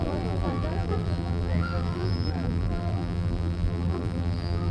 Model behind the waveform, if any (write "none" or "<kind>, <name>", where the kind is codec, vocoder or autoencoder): vocoder, BigVGAN v2